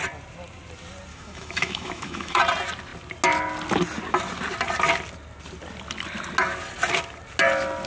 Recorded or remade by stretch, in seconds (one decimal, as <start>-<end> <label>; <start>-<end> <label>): 0.0-1.1 recorded; 1.1-2.4 remade; 2.4-7.9 recorded